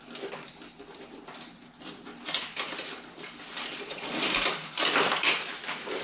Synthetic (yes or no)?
no